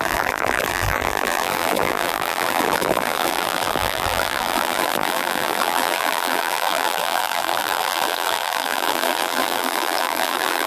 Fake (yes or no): yes